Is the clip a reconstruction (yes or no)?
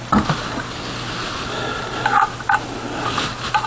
no